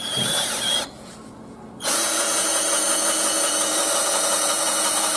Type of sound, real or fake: fake